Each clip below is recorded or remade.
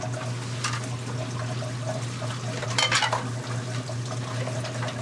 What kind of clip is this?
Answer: recorded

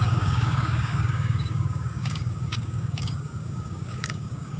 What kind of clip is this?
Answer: remade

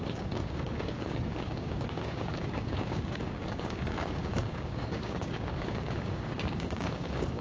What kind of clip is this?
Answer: remade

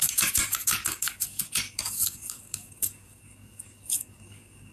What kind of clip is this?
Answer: remade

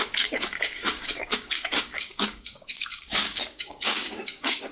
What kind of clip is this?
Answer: remade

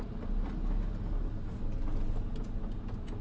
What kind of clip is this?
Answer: recorded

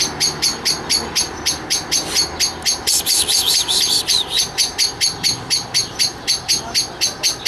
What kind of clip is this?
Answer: recorded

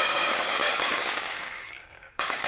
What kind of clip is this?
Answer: remade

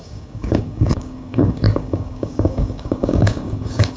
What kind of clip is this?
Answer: remade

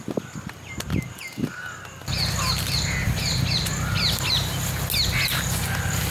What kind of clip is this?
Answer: recorded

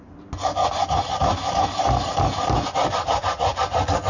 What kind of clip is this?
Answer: recorded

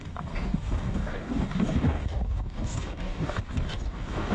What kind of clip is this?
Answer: remade